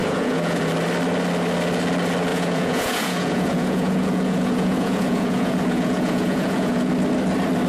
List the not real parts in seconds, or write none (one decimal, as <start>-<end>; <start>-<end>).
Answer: 0.0-0.6; 2.3-6.9